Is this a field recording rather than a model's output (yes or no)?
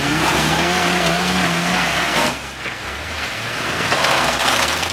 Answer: no